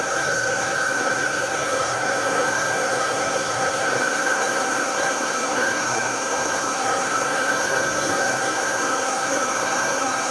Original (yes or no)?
no